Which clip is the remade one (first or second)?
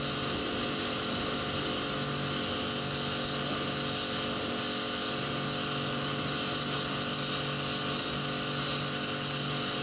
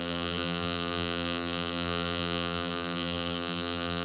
second